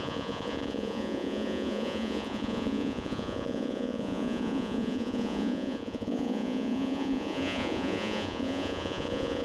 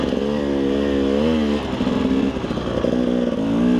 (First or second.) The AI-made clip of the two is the first